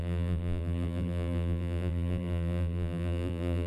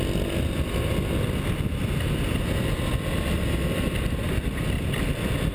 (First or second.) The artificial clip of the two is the first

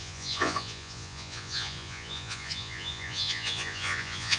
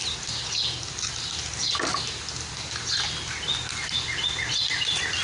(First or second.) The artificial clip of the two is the first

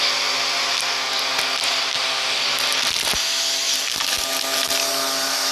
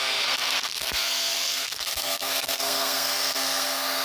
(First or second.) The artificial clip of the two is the second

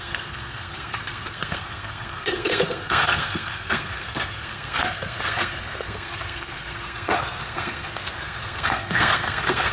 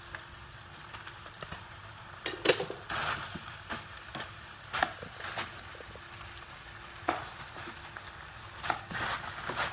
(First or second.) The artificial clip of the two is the first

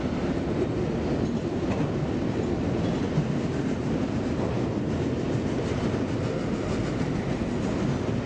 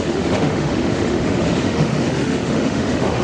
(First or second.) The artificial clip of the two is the second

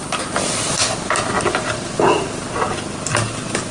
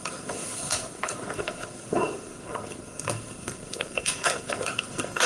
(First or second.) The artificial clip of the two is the second